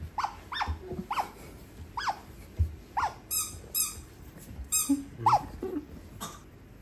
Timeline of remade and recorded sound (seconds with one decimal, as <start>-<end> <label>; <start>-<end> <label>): 0.0-6.8 recorded

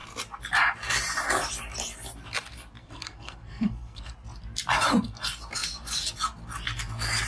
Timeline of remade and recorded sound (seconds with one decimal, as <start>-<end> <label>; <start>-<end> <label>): 0.0-2.8 recorded; 2.8-4.1 remade; 4.1-7.3 recorded